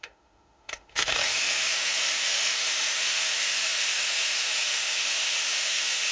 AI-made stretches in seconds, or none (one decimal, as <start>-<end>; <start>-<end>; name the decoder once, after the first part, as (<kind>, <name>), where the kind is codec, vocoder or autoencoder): 0.0-6.1 (autoencoder, DAC-VAE)

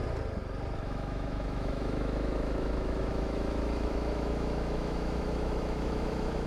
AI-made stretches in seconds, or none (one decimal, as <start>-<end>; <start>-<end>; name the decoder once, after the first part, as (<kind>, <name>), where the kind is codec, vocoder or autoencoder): 0.8-6.5 (autoencoder, DAC-VAE)

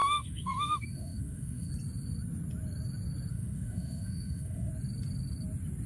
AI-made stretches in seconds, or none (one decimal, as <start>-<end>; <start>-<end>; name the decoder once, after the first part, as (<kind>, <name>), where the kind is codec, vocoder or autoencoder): 0.0-1.7 (autoencoder, DAC-VAE); 3.3-4.7

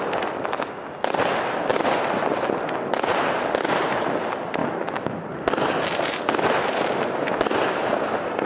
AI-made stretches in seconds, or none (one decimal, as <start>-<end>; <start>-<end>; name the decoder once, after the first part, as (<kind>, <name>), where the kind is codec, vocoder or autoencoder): 4.6-5.2 (autoencoder, DAC-VAE)

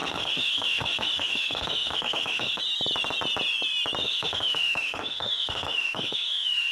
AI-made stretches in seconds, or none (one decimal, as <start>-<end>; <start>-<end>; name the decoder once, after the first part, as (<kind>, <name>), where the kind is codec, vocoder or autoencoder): 0.0-2.6 (autoencoder, DAC-VAE); 4.0-6.7

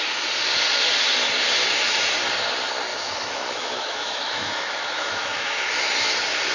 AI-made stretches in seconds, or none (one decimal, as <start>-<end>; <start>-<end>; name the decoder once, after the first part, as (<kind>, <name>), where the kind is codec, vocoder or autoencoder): 2.9-5.7 (autoencoder, DAC-VAE)

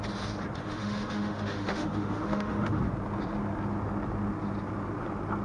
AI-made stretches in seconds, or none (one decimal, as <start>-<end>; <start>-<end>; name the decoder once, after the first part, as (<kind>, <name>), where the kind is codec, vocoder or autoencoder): 0.6-2.8 (autoencoder, DAC-VAE)

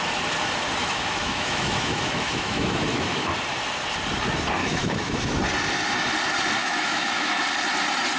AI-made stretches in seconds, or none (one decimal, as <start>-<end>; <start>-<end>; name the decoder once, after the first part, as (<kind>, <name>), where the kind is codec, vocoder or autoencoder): 0.8-3.3 (autoencoder, DAC-VAE); 4.6-5.4; 6.6-7.4